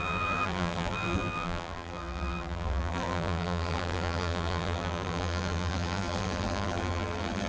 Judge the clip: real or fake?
fake